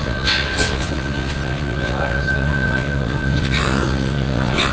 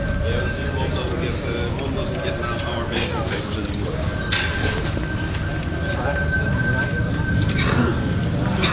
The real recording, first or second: second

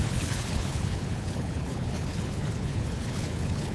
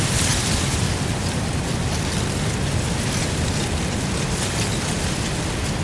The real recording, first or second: second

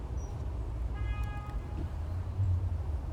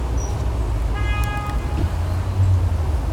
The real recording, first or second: second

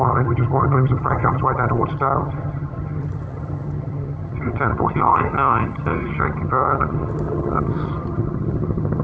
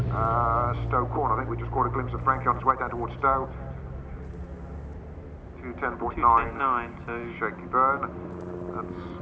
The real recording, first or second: second